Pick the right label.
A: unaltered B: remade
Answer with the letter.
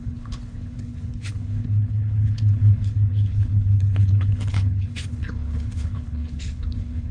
B